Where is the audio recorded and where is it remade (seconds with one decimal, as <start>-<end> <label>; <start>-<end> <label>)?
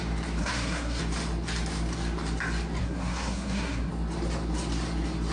0.0-0.4 recorded; 0.4-1.0 remade; 1.0-2.8 recorded; 2.8-3.9 remade; 3.9-5.3 recorded